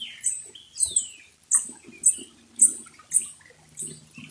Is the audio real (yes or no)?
yes